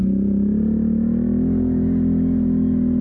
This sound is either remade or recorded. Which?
recorded